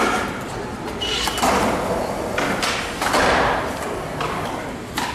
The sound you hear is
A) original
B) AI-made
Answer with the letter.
A